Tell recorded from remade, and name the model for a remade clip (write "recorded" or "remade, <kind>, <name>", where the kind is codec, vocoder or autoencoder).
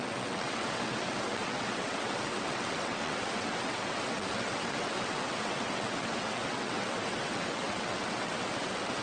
remade, vocoder, WaveNeXt